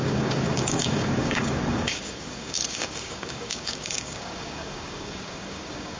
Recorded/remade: remade